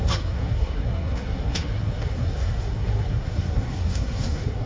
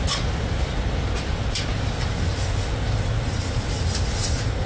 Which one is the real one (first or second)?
second